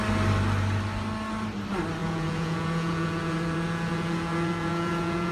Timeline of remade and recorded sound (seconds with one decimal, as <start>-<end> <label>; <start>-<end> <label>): 0.0-2.0 recorded; 2.0-5.3 remade